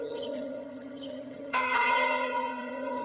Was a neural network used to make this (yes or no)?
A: yes